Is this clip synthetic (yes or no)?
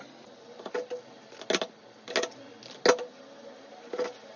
no